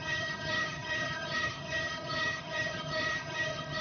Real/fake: fake